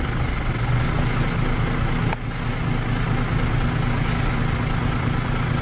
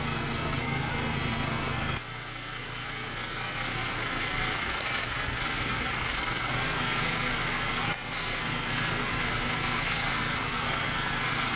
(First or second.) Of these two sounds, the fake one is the second